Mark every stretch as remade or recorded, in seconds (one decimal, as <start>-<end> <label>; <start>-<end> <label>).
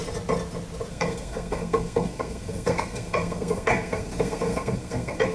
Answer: 0.0-0.9 recorded; 0.9-5.3 remade